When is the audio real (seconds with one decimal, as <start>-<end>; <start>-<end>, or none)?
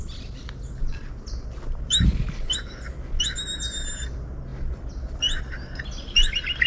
0.0-6.7